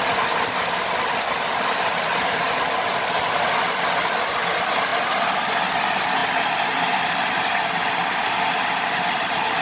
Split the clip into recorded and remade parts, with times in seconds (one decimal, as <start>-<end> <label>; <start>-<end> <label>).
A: 0.0-4.9 recorded; 4.9-5.7 remade; 5.7-9.6 recorded